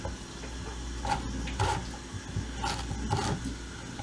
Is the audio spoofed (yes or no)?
no